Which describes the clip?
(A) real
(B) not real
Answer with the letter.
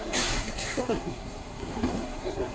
B